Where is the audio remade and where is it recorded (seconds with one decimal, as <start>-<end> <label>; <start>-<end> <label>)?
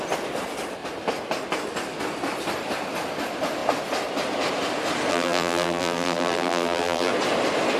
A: 0.0-5.1 recorded; 5.1-7.1 remade; 7.1-7.8 recorded